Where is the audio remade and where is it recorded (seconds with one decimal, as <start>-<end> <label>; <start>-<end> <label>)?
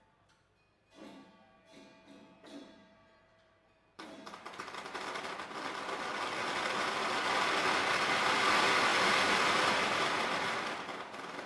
0.0-2.6 recorded; 2.6-5.0 remade; 5.0-11.5 recorded